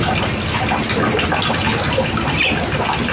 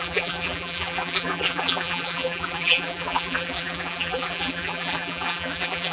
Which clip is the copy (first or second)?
second